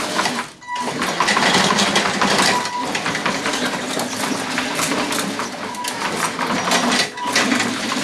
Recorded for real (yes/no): yes